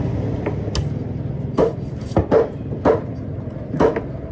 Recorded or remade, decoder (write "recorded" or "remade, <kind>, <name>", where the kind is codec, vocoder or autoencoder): recorded